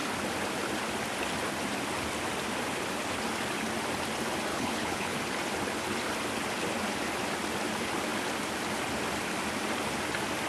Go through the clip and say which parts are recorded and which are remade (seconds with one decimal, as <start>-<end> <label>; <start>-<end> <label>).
0.0-4.5 recorded; 4.5-5.2 remade; 5.2-10.5 recorded